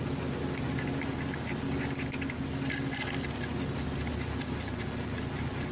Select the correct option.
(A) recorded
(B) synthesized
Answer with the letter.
A